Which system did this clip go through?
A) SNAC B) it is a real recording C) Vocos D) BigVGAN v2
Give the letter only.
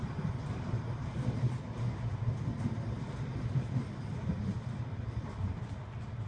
B